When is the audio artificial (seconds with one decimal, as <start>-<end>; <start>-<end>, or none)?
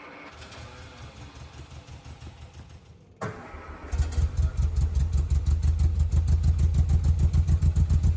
none